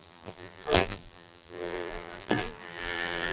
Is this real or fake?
fake